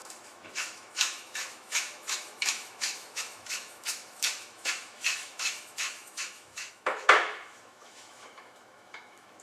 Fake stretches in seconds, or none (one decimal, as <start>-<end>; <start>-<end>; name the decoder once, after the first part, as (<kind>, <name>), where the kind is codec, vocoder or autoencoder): 0.0-9.4 (autoencoder, DAC-VAE)